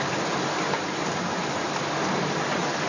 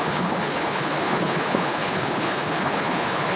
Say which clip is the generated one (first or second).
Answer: second